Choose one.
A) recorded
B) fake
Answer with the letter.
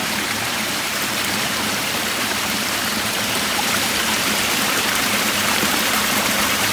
B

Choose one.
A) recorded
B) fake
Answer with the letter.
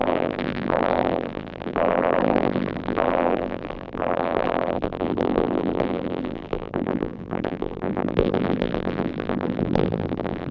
B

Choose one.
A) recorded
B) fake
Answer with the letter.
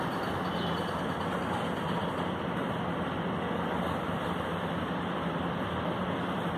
A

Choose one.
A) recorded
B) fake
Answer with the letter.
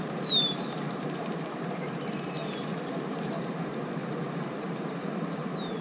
B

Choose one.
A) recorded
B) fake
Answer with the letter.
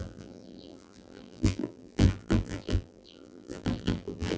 B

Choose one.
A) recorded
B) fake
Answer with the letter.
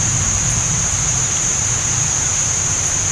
B